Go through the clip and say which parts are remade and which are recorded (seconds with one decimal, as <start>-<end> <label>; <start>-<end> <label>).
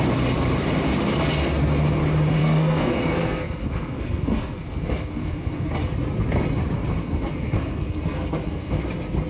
0.0-2.4 recorded; 2.4-5.7 remade; 5.7-7.0 recorded; 7.0-8.8 remade; 8.8-9.3 recorded